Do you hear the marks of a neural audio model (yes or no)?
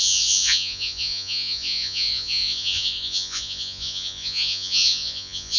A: yes